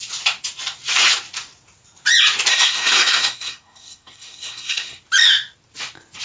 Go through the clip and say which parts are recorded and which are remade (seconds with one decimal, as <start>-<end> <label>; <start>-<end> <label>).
0.0-2.5 recorded; 2.5-5.0 remade; 5.0-6.2 recorded